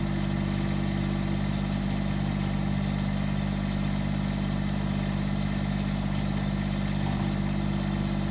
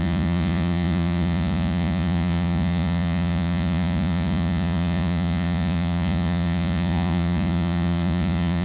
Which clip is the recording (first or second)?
first